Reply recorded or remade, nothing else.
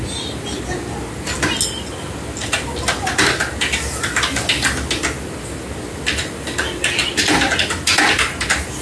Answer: recorded